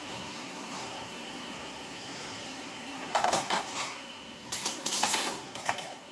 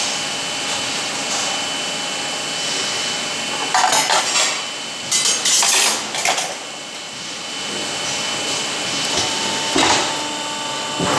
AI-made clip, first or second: first